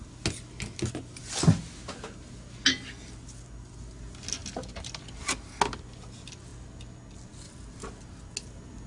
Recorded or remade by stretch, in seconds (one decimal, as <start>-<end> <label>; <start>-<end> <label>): 0.0-8.9 recorded